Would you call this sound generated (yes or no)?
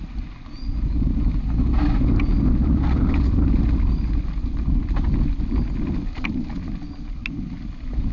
no